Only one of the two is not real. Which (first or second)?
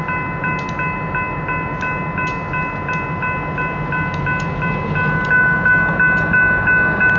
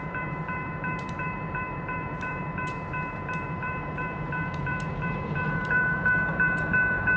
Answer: second